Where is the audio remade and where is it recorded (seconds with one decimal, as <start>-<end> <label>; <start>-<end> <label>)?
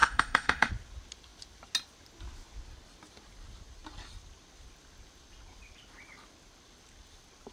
0.0-0.7 remade; 0.7-7.5 recorded